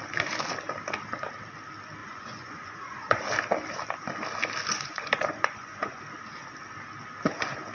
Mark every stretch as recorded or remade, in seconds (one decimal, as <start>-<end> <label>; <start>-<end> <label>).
0.0-2.0 recorded; 2.0-3.2 remade; 3.2-4.7 recorded; 4.7-6.0 remade; 6.0-7.7 recorded

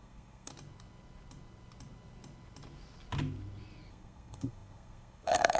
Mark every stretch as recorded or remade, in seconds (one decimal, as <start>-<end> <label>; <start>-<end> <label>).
0.0-0.5 remade; 0.5-3.9 recorded; 3.9-5.6 remade

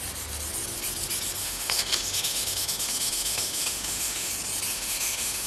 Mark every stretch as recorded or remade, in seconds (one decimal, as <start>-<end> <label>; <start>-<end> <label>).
0.0-1.4 recorded; 1.4-4.3 remade; 4.3-4.7 recorded; 4.7-5.5 remade

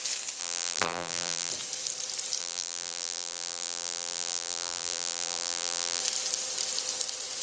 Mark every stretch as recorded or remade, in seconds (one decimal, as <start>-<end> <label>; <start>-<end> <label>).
0.0-0.4 recorded; 0.4-1.5 remade; 1.5-2.4 recorded; 2.4-6.0 remade; 6.0-7.4 recorded

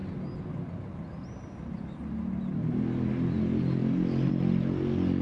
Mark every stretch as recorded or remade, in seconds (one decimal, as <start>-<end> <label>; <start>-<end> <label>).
0.0-5.2 recorded

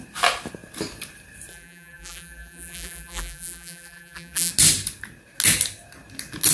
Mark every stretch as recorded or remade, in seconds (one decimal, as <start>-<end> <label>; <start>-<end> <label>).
0.0-1.5 recorded; 1.5-4.5 remade; 4.5-6.5 recorded

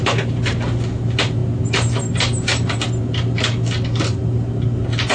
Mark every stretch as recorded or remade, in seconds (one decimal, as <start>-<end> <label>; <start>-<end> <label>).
0.0-5.1 recorded

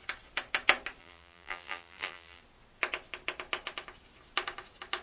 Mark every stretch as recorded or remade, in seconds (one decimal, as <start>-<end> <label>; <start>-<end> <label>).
0.0-1.0 recorded; 1.0-2.4 remade; 2.4-5.0 recorded